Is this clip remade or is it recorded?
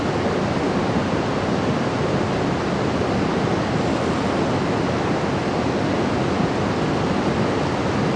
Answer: recorded